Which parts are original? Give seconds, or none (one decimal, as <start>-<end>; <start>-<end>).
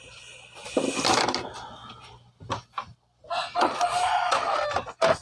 0.0-5.2